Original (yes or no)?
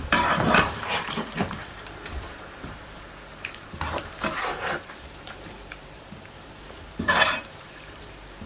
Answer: no